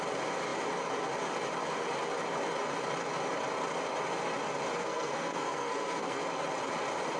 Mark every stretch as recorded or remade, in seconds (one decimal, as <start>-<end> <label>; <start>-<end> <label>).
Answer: 0.0-4.8 recorded; 4.8-6.2 remade; 6.2-7.2 recorded